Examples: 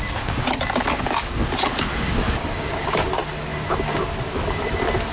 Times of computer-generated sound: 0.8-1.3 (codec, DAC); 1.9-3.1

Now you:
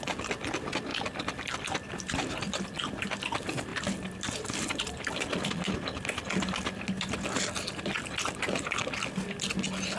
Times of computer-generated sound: 0.9-1.6 (vocoder, BigVGAN v2); 3.7-5.5

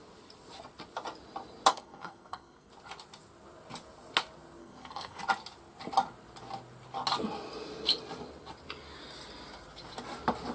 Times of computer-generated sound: 1.7-2.7 (codec, SNAC); 4.6-5.2

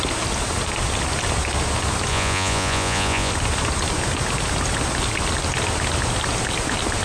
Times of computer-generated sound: 2.1-3.3 (vocoder, Vocos)